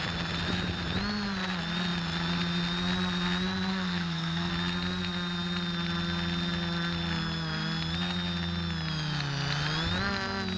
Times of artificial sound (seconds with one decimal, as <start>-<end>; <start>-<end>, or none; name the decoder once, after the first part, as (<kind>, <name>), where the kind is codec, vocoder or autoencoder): 3.7-4.5 (codec, SNAC)